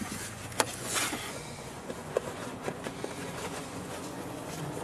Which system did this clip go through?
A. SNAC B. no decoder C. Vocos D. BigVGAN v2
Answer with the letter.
C